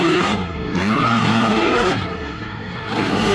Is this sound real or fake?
fake